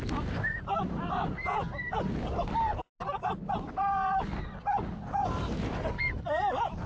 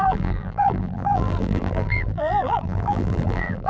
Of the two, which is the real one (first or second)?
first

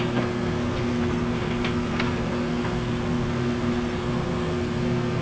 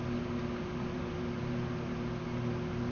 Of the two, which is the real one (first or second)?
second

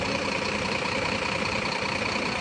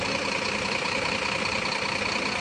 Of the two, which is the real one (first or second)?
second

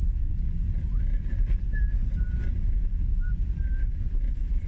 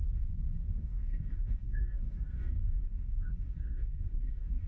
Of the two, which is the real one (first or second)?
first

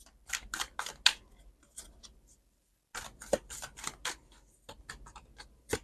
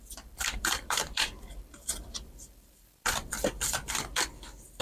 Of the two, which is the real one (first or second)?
first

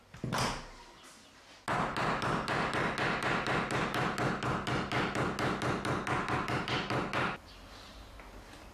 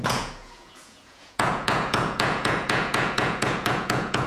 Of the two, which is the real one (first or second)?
first